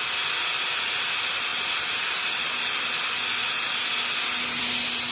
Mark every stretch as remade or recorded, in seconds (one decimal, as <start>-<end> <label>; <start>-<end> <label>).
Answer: 0.0-5.1 recorded